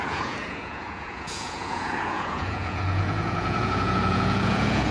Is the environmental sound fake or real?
fake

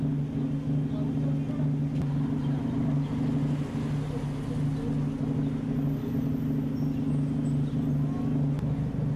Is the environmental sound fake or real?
real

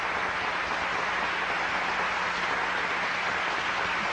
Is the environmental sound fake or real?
real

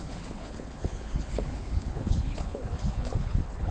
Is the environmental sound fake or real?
fake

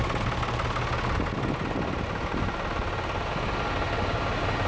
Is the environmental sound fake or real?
real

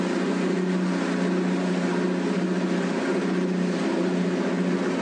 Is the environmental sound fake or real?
real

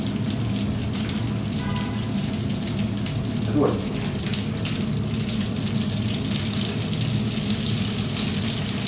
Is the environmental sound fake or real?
real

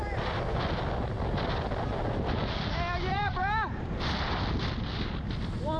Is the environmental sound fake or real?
real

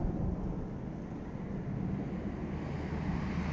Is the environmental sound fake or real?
real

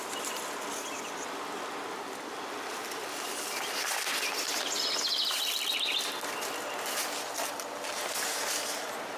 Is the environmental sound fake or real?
real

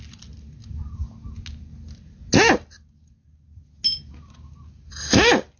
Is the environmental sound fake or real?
real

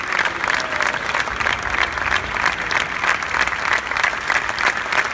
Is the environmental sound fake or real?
real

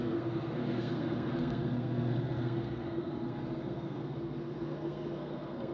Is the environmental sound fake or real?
fake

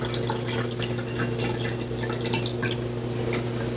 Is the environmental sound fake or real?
real